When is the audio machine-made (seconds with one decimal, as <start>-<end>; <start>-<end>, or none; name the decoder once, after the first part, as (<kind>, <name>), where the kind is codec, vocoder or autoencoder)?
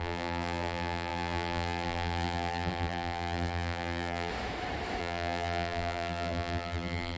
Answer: 0.0-4.3 (vocoder, BigVGAN v2); 5.0-7.2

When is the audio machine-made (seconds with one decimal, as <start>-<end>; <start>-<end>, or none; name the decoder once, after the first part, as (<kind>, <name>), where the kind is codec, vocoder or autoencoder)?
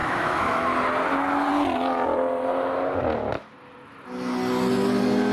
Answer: 0.0-0.6 (autoencoder, DAC-VAE)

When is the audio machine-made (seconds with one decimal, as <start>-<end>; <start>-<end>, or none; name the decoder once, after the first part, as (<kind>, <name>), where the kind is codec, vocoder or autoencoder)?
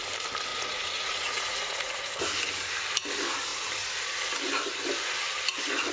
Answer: 0.5-2.1 (vocoder, Vocos)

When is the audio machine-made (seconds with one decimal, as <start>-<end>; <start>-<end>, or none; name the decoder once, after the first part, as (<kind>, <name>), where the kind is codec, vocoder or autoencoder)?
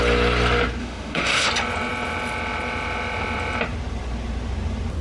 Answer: 0.8-1.5 (autoencoder, DAC-VAE)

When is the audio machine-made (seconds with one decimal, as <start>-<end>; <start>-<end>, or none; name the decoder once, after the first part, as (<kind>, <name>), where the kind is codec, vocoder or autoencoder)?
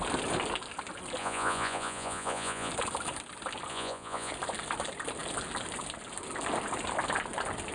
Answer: 1.2-2.7 (vocoder, Vocos); 3.7-4.3